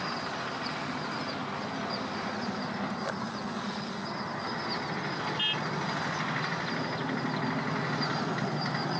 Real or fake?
real